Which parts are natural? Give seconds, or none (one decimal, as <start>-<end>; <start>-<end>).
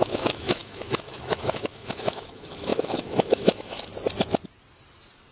3.9-5.3